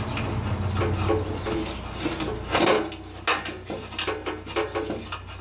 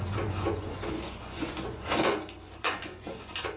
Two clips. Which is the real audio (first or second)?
first